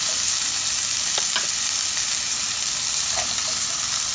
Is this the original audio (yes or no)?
yes